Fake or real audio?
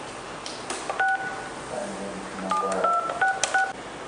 real